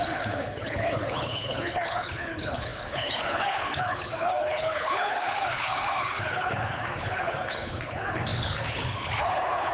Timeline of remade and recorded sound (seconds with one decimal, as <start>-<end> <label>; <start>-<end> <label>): 0.0-9.7 remade